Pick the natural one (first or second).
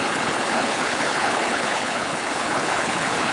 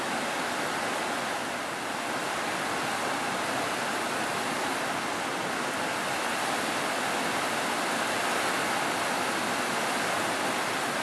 second